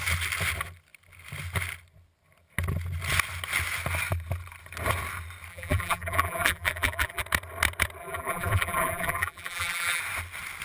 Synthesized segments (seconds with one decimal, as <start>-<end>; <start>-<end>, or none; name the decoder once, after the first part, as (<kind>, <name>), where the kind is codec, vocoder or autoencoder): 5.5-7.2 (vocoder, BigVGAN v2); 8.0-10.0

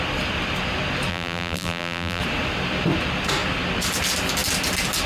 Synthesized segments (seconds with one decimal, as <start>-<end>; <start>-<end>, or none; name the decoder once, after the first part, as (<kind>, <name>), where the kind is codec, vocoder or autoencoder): 1.1-2.2 (vocoder, BigVGAN v2)

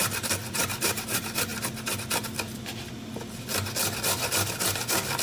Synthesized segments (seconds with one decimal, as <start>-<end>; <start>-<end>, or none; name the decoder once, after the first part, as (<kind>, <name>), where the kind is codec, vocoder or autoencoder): none